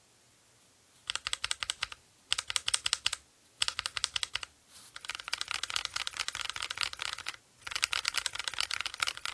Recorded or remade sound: recorded